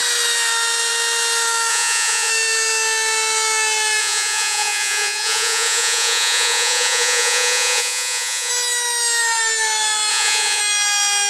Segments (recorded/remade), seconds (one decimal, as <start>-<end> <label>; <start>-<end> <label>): 0.0-1.7 recorded; 1.7-2.3 remade; 2.3-4.0 recorded; 4.0-8.5 remade; 8.5-10.1 recorded; 10.1-10.6 remade; 10.6-11.3 recorded